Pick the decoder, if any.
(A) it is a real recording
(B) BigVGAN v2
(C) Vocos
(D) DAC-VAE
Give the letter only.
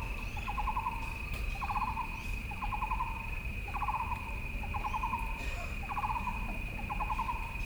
B